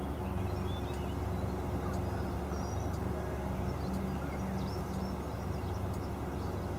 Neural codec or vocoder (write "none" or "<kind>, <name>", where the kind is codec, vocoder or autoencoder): none